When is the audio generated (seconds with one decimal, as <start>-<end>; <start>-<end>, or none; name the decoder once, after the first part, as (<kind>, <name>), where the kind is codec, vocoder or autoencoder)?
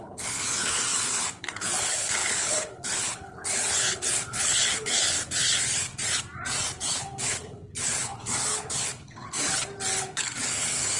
0.0-5.9 (codec, HILCodec); 6.8-9.5; 10.0-11.0